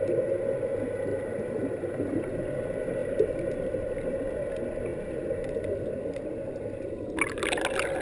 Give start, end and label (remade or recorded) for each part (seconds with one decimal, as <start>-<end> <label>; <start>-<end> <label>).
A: 0.0-1.1 recorded; 1.1-2.4 remade; 2.4-8.0 recorded